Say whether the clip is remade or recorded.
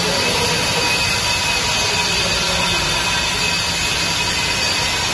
recorded